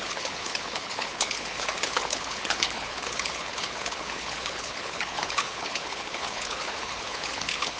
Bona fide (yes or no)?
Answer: no